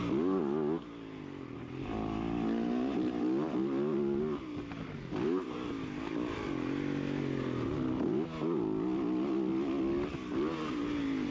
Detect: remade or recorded recorded